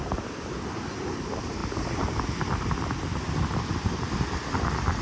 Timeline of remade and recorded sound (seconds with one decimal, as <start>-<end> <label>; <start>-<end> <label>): 0.0-5.0 recorded